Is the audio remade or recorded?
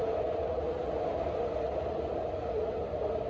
recorded